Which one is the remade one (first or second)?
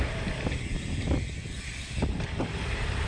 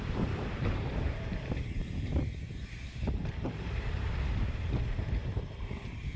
second